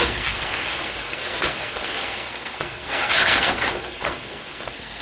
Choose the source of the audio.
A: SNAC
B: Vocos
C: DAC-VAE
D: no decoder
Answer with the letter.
A